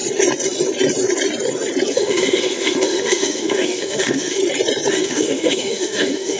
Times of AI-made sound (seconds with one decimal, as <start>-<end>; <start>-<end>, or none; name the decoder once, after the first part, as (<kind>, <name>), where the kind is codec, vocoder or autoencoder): 1.9-4.4 (autoencoder, DAC-VAE); 4.9-6.4